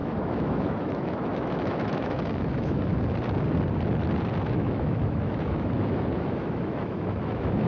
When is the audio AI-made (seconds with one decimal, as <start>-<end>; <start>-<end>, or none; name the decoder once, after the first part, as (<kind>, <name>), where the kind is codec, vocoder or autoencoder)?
0.0-2.9 (autoencoder, DAC-VAE); 4.5-7.7